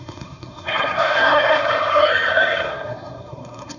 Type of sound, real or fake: fake